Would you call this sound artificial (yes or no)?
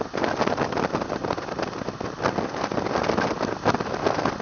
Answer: no